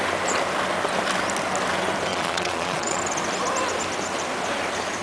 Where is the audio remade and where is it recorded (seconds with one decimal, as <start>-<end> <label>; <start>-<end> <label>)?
0.0-2.1 recorded; 2.1-3.0 remade; 3.0-5.0 recorded

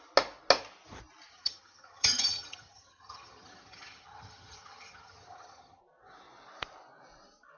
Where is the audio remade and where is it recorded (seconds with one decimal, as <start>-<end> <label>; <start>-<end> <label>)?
0.0-1.3 recorded; 1.3-5.8 remade; 5.8-7.6 recorded

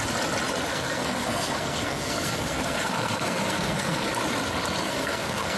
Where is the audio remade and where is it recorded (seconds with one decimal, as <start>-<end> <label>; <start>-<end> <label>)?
0.0-0.7 recorded; 0.7-4.1 remade; 4.1-4.8 recorded; 4.8-5.6 remade

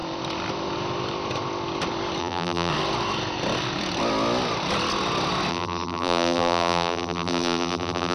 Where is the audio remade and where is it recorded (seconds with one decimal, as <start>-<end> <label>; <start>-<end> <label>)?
0.0-2.2 recorded; 2.2-2.7 remade; 2.7-5.5 recorded; 5.5-8.1 remade

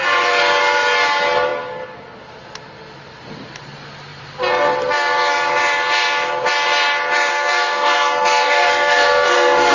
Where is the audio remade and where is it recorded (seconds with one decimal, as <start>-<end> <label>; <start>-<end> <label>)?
0.0-7.3 recorded; 7.3-9.7 remade

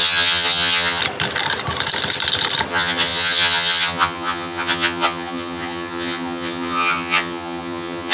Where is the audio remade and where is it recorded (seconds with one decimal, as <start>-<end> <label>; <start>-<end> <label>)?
0.0-1.0 remade; 1.0-2.7 recorded; 2.7-8.1 remade

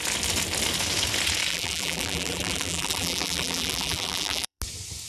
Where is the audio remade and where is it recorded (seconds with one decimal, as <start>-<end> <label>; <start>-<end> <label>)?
0.0-1.5 recorded; 1.5-4.6 remade; 4.6-5.1 recorded

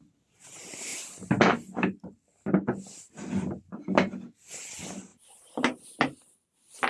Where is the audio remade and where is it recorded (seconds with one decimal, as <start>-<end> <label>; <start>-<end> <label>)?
0.0-6.9 recorded